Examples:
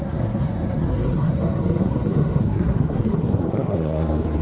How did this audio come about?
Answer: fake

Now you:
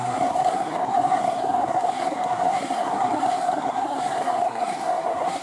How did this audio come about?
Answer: fake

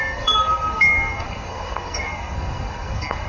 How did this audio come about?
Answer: fake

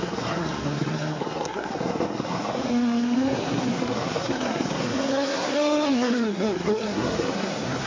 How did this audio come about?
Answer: fake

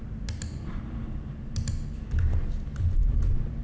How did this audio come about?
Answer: real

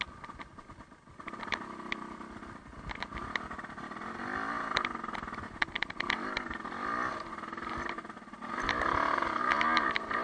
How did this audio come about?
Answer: real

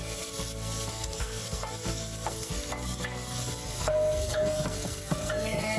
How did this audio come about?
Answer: fake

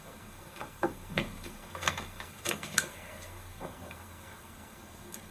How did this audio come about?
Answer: fake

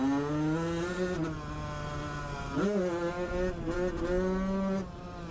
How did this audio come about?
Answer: real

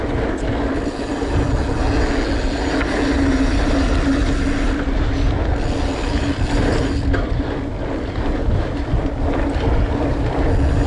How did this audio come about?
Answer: real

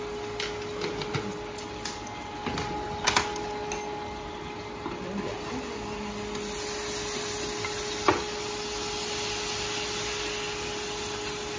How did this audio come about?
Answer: real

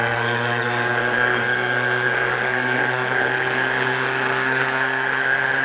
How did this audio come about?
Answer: fake